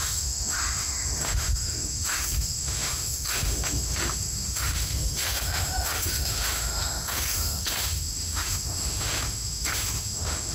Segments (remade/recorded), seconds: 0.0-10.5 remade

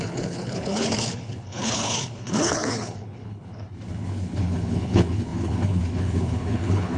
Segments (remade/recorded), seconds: 0.0-7.0 remade

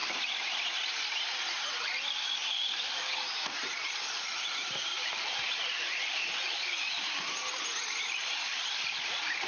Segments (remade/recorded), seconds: 0.0-3.8 recorded; 3.8-7.7 remade; 7.7-8.2 recorded; 8.2-9.5 remade

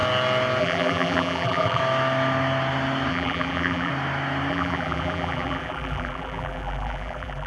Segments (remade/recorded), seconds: 0.0-0.6 recorded; 0.6-1.8 remade; 1.8-3.1 recorded; 3.1-3.9 remade; 3.9-4.5 recorded; 4.5-7.5 remade

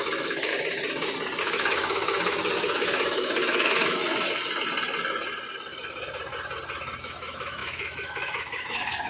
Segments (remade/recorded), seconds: 0.0-0.5 remade; 0.5-1.4 recorded; 1.4-4.0 remade; 4.0-7.0 recorded; 7.0-9.1 remade

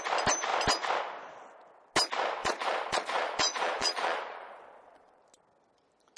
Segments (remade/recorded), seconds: 0.0-2.4 recorded; 2.4-5.2 remade; 5.2-6.2 recorded

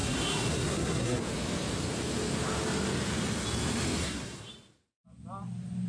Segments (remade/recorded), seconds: 0.0-1.2 remade; 1.2-4.0 recorded; 4.0-4.5 remade; 4.5-5.9 recorded

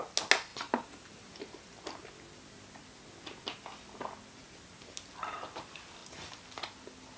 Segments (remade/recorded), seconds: 0.0-0.5 recorded; 0.5-1.3 remade; 1.3-7.2 recorded